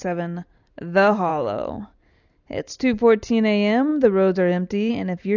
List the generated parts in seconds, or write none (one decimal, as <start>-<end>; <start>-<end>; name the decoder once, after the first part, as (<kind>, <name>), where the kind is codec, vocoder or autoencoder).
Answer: 1.3-2.3 (codec, DAC)